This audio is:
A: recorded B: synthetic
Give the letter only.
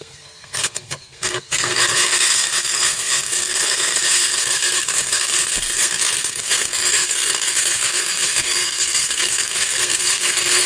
B